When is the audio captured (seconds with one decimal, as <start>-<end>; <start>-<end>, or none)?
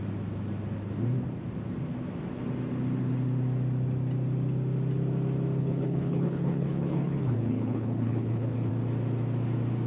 0.0-5.6; 8.7-9.9